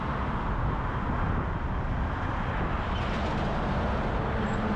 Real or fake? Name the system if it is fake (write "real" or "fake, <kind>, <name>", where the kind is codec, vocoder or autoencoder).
real